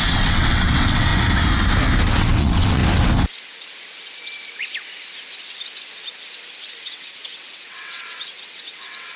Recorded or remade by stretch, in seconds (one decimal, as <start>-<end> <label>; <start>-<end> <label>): 0.0-1.1 remade; 1.1-2.1 recorded; 2.1-2.8 remade; 2.8-6.8 recorded; 6.8-9.2 remade